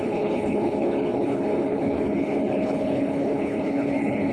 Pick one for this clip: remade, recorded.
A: remade